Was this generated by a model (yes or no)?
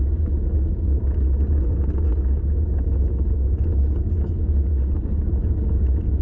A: no